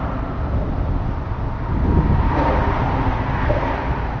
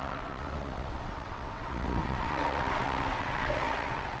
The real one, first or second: first